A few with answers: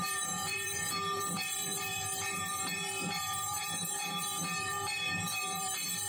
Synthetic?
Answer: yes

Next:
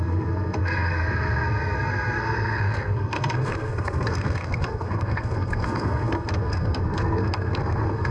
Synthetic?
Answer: yes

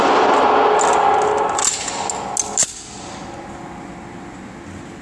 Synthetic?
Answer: no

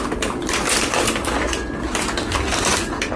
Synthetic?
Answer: no